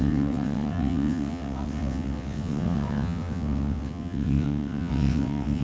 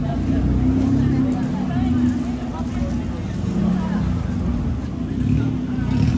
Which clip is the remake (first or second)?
first